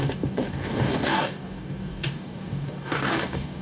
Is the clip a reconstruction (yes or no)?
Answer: yes